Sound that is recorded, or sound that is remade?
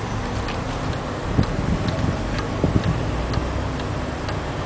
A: recorded